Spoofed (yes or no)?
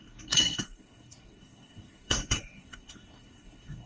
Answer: yes